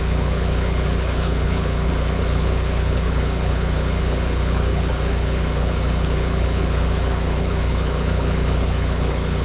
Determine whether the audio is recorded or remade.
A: remade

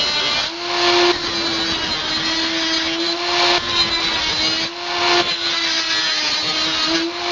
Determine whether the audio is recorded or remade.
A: recorded